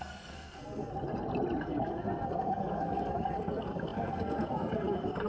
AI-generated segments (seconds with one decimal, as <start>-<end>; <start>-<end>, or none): 0.0-0.9; 1.6-5.3